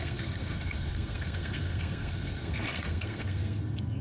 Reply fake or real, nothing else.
fake